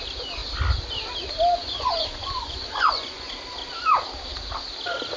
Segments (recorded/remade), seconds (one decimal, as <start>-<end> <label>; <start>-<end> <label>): 0.0-1.6 recorded; 1.6-3.3 remade; 3.3-5.2 recorded